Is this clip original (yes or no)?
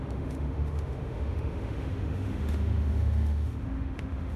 no